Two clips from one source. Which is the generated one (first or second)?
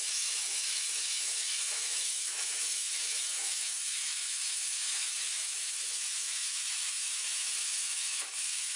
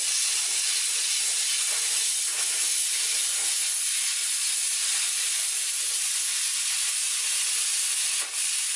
first